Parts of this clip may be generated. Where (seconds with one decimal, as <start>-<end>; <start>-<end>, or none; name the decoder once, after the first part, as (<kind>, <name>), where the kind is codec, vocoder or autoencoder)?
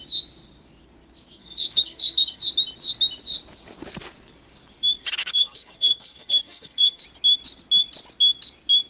1.4-2.4 (codec, SNAC); 5.2-7.0